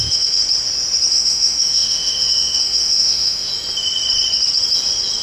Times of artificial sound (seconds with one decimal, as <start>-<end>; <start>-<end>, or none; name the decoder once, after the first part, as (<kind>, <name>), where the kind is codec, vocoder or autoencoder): 0.0-0.4 (autoencoder, DAC-VAE); 1.1-3.5

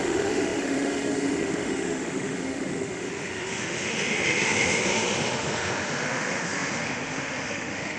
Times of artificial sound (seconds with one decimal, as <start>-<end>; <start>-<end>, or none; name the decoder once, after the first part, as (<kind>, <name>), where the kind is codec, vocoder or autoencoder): 0.0-8.0 (autoencoder, DAC-VAE)